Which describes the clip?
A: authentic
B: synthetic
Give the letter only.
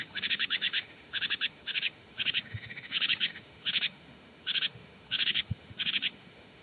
B